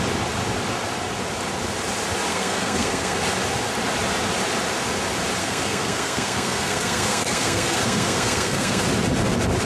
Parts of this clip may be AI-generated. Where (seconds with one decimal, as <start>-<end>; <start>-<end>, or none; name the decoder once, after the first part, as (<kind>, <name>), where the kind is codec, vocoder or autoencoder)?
2.3-3.2 (codec, SNAC); 5.4-8.8